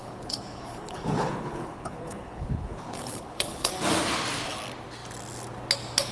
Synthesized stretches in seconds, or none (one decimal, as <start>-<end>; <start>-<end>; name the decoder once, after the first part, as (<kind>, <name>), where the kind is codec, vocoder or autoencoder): 0.0-3.7 (codec, HILCodec)